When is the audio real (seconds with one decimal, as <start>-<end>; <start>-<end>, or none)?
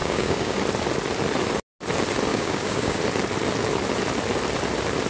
0.6-2.3; 3.0-5.1